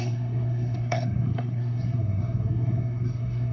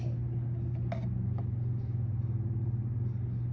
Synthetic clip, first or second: first